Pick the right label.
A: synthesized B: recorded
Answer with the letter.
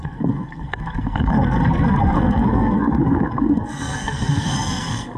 A